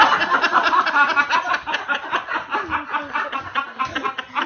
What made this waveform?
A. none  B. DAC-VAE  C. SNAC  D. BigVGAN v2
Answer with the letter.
A